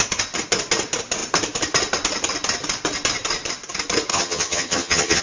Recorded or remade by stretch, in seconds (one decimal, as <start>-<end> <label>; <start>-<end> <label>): 0.0-4.1 recorded; 4.1-5.2 remade